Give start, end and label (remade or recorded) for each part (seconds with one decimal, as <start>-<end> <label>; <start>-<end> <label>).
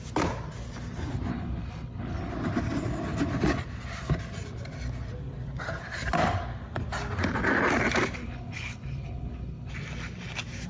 0.0-1.3 recorded; 1.3-2.3 remade; 2.3-8.2 recorded; 8.2-9.7 remade; 9.7-10.7 recorded